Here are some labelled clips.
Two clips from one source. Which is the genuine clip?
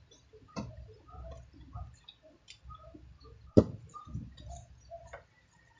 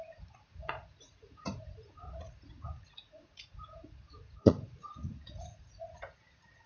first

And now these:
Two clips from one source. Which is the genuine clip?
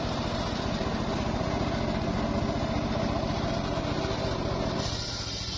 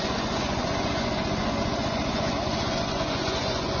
first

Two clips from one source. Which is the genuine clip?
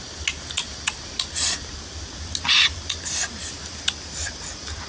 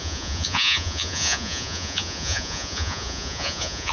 first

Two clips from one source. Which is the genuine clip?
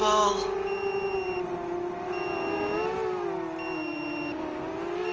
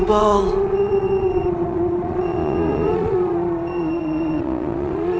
first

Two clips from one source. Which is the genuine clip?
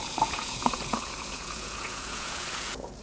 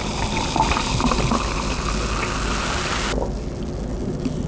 second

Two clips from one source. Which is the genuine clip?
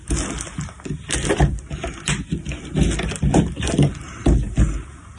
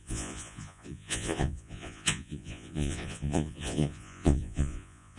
first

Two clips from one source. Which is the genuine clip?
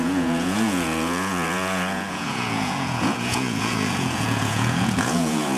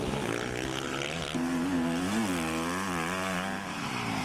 second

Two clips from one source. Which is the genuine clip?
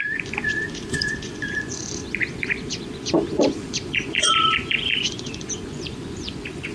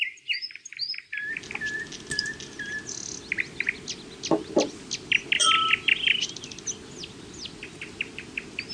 second